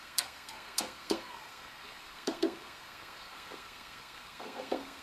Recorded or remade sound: remade